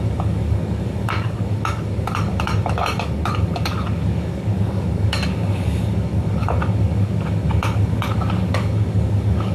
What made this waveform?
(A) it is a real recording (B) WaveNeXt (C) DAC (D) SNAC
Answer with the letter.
C